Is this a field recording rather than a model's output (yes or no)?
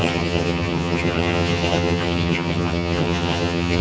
no